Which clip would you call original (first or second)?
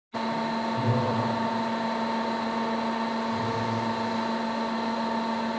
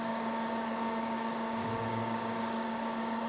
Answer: first